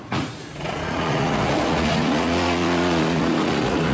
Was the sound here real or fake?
fake